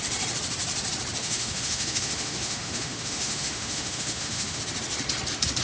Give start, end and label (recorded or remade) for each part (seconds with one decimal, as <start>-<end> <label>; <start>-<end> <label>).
0.0-1.2 recorded; 1.2-4.6 remade; 4.6-5.6 recorded